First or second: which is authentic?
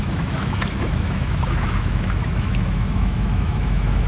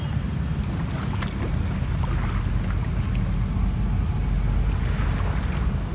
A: second